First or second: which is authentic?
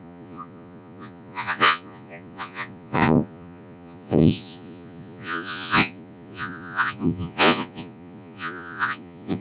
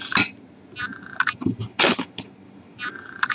second